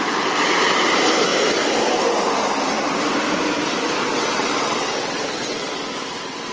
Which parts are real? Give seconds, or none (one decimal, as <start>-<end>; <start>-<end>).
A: 0.0-4.0; 5.8-6.5